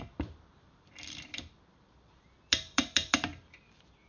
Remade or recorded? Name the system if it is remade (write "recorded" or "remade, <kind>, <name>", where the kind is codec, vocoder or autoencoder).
remade, vocoder, BigVGAN v2